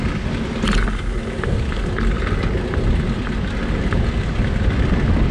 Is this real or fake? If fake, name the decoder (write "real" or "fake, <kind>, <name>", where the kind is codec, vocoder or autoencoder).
real